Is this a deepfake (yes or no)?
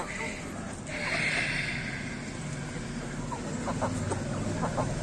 no